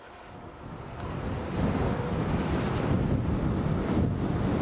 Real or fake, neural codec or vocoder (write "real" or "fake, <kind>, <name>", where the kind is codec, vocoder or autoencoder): real